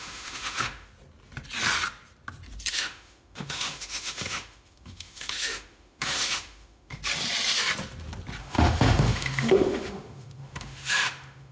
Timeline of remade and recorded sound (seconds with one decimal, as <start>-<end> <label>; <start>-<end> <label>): 0.0-0.9 remade; 0.9-2.7 recorded; 2.7-7.0 remade; 7.0-8.4 recorded; 8.4-11.5 remade